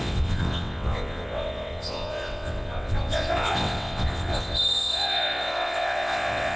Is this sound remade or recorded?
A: remade